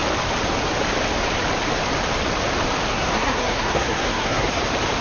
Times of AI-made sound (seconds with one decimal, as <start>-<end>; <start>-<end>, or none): 2.9-4.6